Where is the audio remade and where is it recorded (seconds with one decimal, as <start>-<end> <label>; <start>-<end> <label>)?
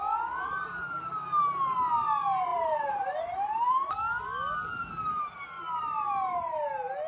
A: 0.0-2.5 recorded; 2.5-3.9 remade; 3.9-4.8 recorded; 4.8-5.8 remade; 5.8-7.1 recorded